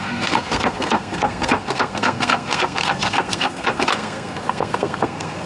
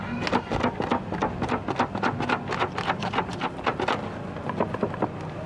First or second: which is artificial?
first